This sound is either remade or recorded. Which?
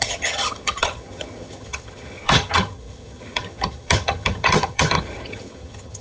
remade